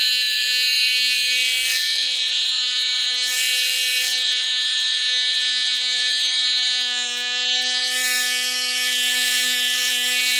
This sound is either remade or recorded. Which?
remade